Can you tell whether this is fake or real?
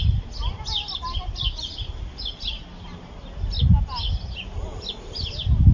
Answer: real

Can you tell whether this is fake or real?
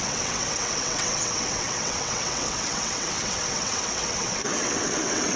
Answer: fake